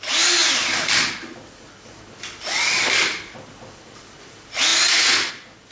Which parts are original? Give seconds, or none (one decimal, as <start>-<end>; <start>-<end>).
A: 0.0-5.7